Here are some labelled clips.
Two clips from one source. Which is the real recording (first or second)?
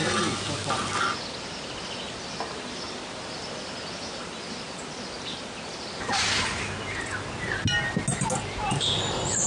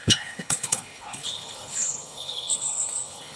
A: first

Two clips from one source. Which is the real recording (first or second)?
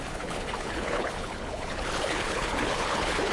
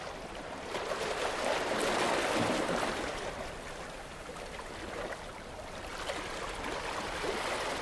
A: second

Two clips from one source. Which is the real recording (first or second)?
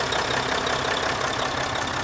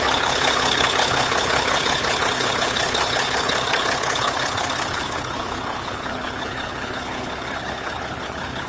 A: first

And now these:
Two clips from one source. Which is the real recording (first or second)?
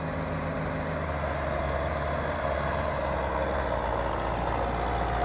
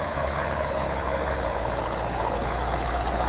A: first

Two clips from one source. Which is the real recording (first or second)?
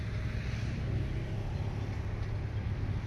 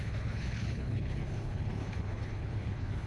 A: first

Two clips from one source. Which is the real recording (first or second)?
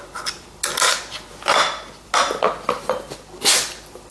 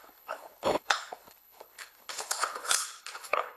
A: first